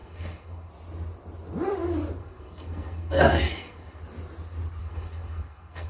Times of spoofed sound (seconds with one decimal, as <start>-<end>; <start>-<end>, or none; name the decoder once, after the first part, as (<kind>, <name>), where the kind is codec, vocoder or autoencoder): 0.0-0.7 (codec, SNAC); 2.2-4.0; 4.8-5.9